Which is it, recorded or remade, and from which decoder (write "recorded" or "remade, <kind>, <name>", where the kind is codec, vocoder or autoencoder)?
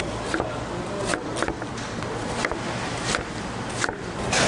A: recorded